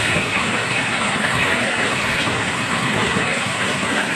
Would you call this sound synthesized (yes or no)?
yes